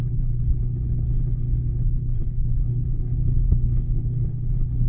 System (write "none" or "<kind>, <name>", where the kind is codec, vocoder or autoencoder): codec, HILCodec